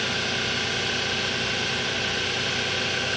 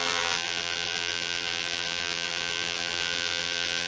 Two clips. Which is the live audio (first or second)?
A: first